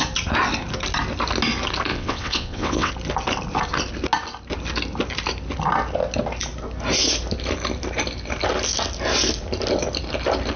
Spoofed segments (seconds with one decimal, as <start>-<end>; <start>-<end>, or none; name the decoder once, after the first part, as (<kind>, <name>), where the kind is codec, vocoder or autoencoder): 1.9-2.9 (vocoder, WaveNeXt)